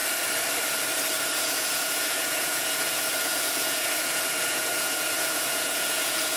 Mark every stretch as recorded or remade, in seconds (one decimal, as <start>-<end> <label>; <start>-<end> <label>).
0.0-1.4 recorded; 1.4-6.4 remade